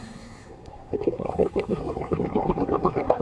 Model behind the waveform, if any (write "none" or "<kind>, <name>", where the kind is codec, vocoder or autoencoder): codec, SNAC